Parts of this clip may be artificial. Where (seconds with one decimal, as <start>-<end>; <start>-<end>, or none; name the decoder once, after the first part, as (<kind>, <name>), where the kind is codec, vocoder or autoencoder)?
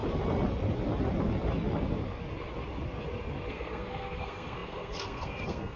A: 3.5-5.8 (codec, SNAC)